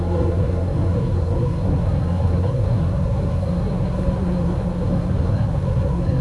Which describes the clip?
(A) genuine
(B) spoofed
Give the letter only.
B